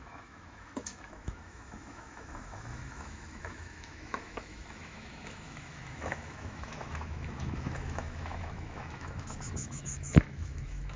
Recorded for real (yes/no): no